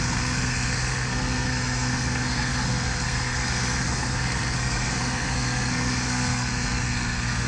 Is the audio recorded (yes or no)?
no